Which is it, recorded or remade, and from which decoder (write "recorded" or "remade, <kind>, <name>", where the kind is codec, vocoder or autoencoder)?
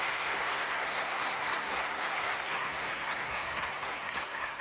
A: remade, codec, SNAC